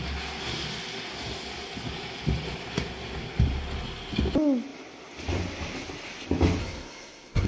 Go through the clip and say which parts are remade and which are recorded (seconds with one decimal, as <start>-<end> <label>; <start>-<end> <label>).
0.0-6.6 recorded; 6.6-7.5 remade